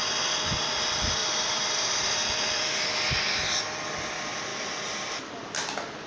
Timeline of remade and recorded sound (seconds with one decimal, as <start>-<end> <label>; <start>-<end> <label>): 0.0-1.2 recorded; 1.2-2.9 remade; 2.9-4.5 recorded; 4.5-5.5 remade; 5.5-6.1 recorded